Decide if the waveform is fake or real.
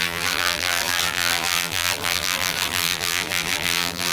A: fake